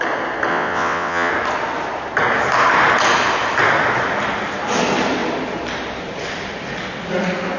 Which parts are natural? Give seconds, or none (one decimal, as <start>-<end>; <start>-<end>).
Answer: 0.0-0.5; 1.3-7.6